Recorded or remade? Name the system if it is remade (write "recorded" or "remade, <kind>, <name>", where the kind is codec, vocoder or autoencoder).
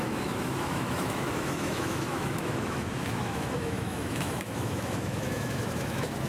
remade, autoencoder, DAC-VAE